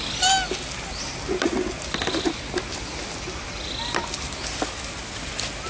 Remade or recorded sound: recorded